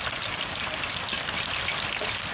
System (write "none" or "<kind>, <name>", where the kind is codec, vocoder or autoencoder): none